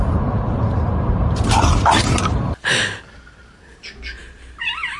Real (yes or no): no